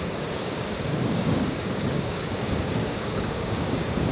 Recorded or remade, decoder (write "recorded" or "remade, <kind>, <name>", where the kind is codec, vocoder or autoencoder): remade, codec, DAC